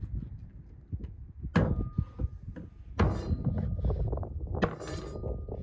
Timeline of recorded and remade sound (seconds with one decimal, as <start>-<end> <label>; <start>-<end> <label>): 0.0-5.6 recorded